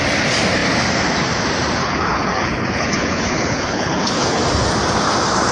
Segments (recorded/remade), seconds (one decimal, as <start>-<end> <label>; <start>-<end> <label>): 0.0-1.8 recorded; 1.8-4.4 remade; 4.4-5.5 recorded

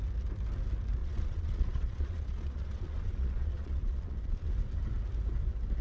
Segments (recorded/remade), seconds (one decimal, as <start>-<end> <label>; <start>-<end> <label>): 0.0-1.0 recorded; 1.0-4.5 remade; 4.5-5.8 recorded